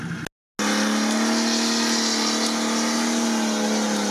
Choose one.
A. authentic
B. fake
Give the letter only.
A